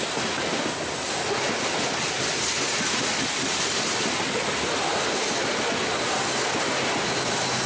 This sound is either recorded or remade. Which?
recorded